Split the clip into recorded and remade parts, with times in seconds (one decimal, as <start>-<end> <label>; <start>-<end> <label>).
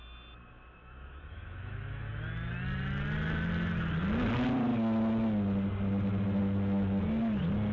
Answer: 0.0-0.8 recorded; 0.8-2.1 remade; 2.1-7.7 recorded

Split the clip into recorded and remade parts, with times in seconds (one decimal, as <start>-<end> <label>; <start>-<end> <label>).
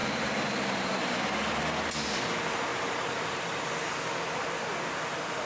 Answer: 0.0-1.6 remade; 1.6-2.7 recorded; 2.7-3.9 remade; 3.9-5.5 recorded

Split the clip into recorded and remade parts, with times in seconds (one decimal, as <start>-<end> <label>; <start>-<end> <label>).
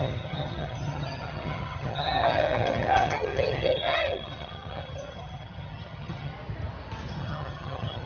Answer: 0.0-6.3 remade; 6.3-7.1 recorded; 7.1-8.1 remade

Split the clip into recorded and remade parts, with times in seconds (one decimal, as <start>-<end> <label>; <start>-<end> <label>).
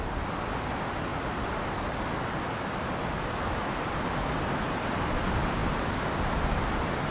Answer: 0.0-7.1 recorded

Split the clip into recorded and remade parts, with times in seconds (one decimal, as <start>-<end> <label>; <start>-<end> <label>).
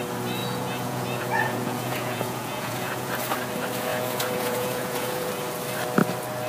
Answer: 0.0-0.4 recorded; 0.4-3.1 remade; 3.1-3.9 recorded; 3.9-5.3 remade; 5.3-6.5 recorded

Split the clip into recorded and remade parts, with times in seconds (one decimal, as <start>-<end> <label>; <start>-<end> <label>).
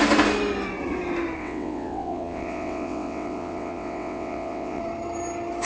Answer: 0.0-1.4 recorded; 1.4-4.8 remade; 4.8-5.7 recorded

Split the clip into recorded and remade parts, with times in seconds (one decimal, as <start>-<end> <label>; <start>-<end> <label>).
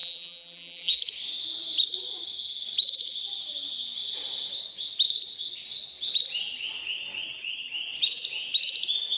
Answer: 0.0-1.0 remade; 1.0-9.2 recorded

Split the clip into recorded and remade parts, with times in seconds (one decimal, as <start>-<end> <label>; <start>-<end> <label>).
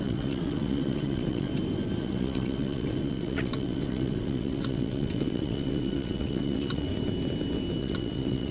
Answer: 0.0-1.5 remade; 1.5-2.0 recorded; 2.0-6.9 remade; 6.9-7.8 recorded; 7.8-8.5 remade